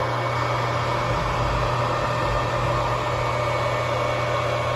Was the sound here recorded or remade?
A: recorded